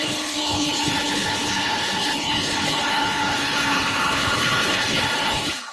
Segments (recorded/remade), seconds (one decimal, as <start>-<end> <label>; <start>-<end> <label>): 0.0-5.7 remade